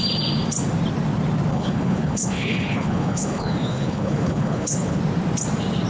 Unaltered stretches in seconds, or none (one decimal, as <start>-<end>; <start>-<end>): 0.0-1.5; 5.0-5.9